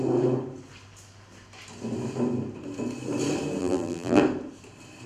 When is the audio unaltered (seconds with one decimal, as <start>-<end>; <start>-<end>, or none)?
0.0-3.6; 4.2-5.1